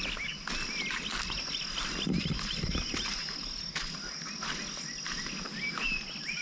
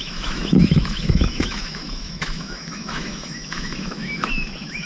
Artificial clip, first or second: second